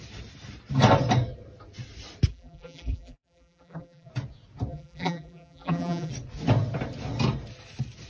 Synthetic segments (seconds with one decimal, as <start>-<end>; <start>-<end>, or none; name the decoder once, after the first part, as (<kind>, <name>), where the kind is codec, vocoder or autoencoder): 2.3-4.1 (vocoder, BigVGAN v2); 4.7-6.1